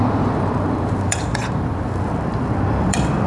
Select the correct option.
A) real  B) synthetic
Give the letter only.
B